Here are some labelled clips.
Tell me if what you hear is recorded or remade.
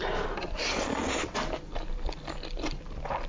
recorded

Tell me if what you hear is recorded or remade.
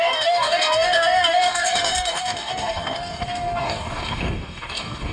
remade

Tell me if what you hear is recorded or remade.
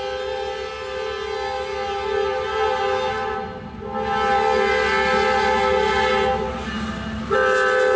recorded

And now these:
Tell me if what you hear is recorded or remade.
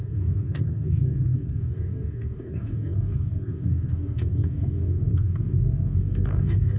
remade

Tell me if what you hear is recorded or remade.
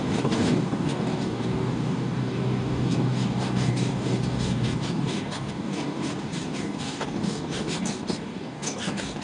remade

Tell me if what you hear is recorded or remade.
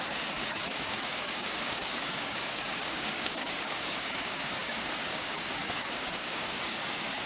remade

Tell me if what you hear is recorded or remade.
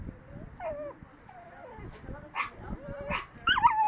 recorded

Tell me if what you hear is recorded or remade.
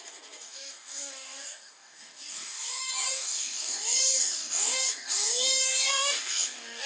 remade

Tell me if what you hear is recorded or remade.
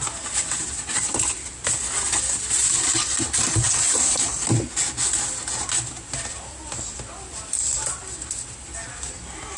recorded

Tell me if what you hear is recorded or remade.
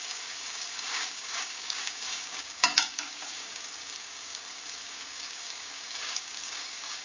remade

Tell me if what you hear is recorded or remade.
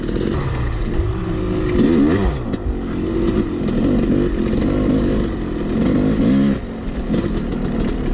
recorded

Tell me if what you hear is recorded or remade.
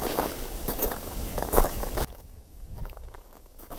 remade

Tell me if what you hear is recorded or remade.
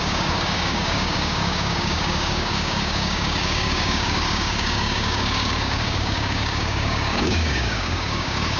remade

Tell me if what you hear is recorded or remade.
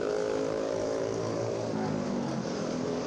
remade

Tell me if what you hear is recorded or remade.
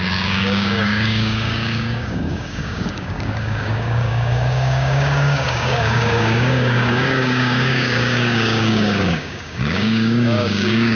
remade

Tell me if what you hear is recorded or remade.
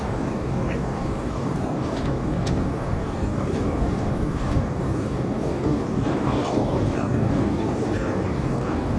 remade